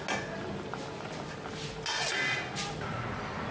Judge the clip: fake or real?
real